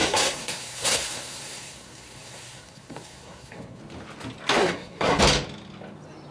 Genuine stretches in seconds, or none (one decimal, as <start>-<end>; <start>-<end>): 3.8-4.6; 5.2-6.3